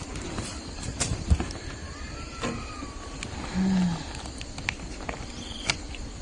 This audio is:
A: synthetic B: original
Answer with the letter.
B